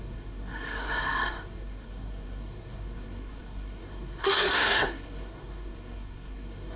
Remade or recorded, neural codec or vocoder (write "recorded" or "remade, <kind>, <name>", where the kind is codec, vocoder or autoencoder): remade, codec, SNAC